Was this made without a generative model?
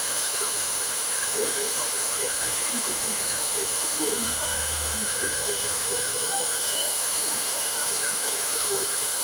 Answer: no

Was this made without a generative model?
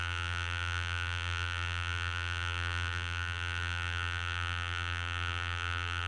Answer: no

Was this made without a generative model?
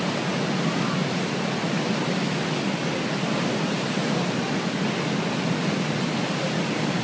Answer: yes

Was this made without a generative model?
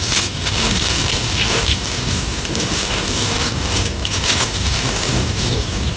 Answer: no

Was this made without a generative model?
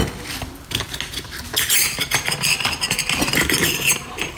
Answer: yes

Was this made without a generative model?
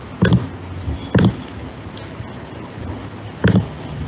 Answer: yes